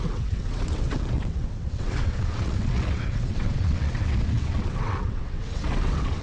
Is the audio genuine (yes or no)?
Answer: no